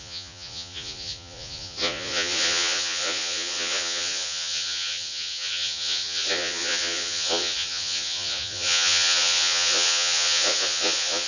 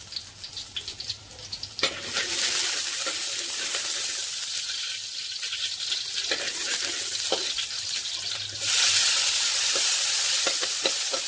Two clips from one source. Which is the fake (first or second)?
first